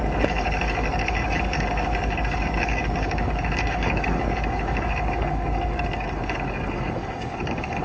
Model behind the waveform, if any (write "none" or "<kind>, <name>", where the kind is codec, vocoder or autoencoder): codec, DAC